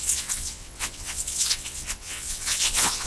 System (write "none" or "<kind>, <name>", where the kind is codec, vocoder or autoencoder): vocoder, WaveNeXt